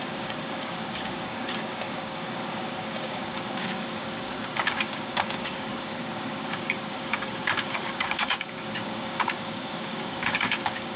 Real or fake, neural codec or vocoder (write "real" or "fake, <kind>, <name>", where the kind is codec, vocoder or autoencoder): fake, codec, DAC